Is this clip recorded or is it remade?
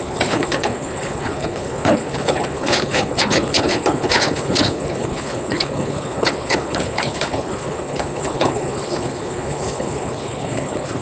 remade